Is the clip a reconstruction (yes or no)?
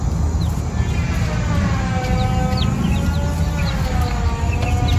no